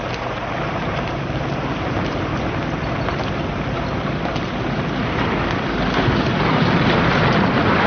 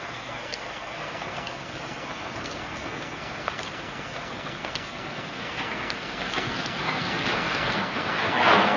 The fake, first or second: second